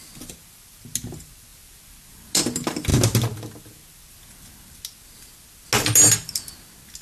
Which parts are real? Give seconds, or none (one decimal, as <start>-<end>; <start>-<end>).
0.0-7.0